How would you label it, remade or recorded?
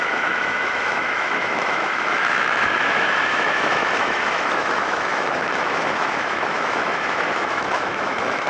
remade